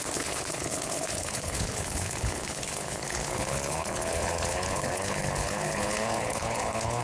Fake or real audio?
fake